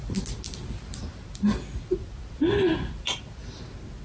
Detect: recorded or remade recorded